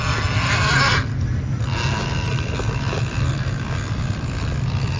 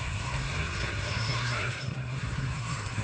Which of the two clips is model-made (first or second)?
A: second